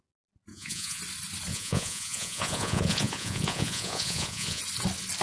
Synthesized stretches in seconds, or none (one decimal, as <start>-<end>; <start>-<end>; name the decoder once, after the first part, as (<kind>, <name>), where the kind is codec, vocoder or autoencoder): 0.5-1.0 (vocoder, Vocos); 1.5-4.6